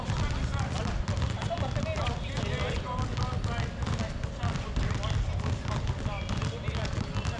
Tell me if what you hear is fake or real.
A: real